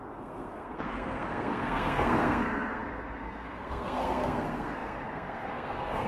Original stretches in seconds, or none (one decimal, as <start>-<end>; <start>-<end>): none